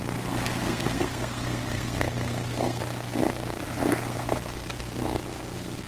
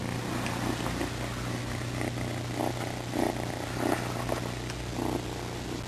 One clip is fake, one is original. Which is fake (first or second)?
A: first